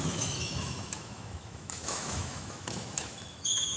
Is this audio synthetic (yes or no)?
yes